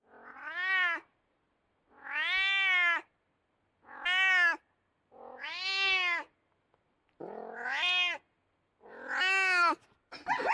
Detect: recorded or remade recorded